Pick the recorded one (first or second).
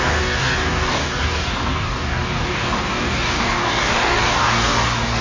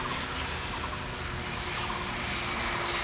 second